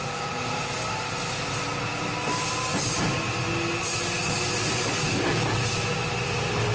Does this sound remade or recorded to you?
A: recorded